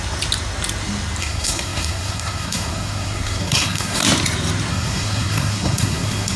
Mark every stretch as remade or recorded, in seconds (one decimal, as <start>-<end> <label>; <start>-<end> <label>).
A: 0.0-1.2 recorded; 1.2-4.0 remade; 4.0-4.7 recorded; 4.7-6.4 remade